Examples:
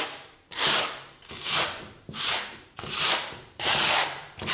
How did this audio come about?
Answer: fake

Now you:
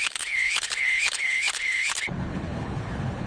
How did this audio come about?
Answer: fake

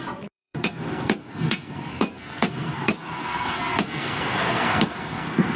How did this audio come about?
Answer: fake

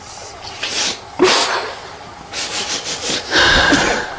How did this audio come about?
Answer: real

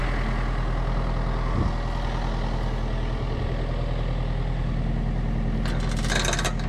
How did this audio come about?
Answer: real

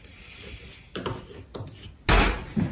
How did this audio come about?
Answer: real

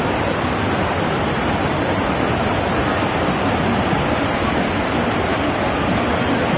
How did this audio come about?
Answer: real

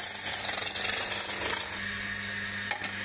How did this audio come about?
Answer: real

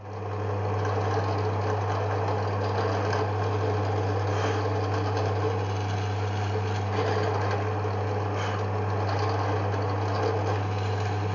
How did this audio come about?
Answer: real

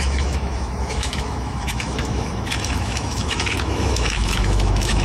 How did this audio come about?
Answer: fake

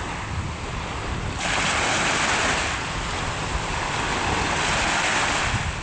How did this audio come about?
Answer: real